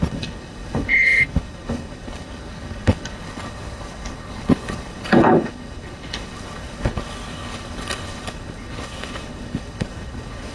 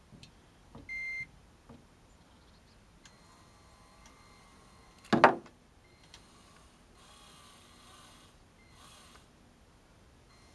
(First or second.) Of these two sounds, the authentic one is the second